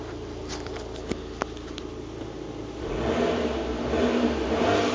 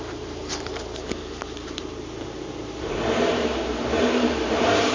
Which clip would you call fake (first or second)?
second